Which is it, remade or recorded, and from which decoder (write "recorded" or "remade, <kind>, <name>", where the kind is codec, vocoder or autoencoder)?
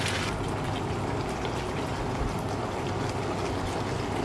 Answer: recorded